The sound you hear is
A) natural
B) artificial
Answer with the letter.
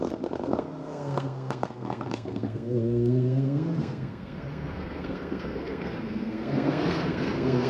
B